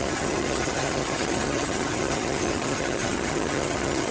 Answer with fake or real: fake